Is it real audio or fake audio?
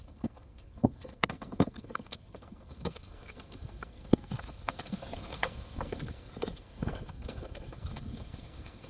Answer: fake